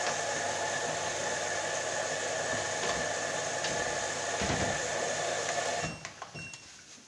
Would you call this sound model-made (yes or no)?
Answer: no